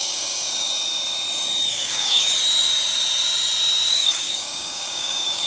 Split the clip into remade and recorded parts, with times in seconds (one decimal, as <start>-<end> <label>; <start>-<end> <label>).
0.0-0.7 remade; 0.7-1.7 recorded; 1.7-2.3 remade; 2.3-3.9 recorded; 3.9-5.5 remade